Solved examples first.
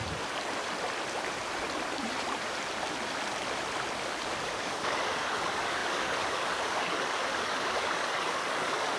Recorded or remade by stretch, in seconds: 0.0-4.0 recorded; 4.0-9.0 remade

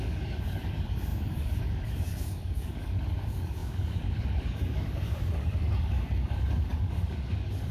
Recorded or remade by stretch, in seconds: 0.0-7.7 remade